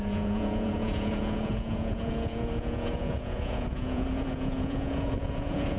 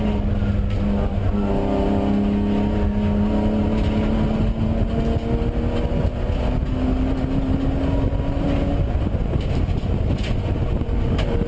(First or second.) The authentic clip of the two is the second